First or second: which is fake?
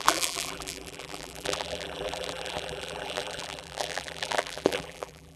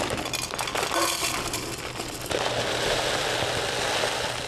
first